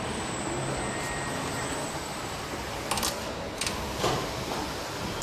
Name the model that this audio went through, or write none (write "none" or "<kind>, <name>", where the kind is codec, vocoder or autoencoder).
none